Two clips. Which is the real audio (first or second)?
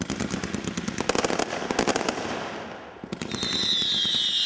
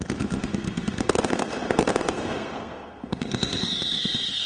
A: first